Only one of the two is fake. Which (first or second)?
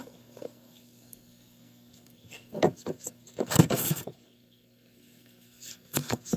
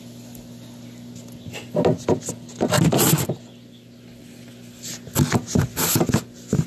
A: first